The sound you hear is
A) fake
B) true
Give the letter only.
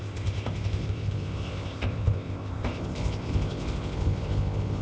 A